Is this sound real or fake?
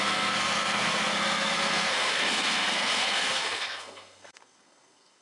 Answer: fake